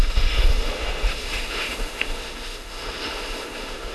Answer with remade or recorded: remade